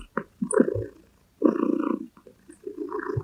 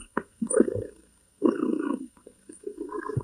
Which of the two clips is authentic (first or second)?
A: first